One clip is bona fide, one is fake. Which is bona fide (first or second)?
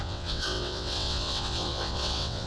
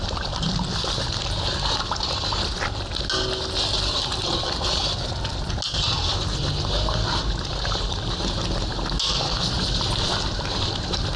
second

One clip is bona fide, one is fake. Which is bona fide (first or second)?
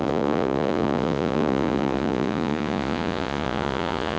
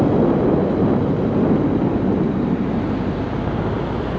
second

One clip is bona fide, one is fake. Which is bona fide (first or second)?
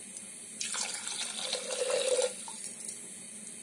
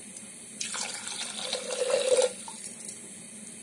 first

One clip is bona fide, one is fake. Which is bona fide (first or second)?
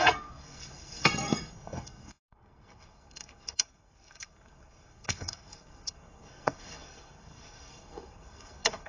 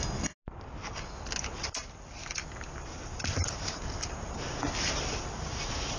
second